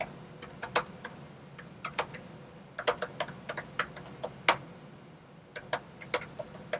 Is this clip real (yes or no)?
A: yes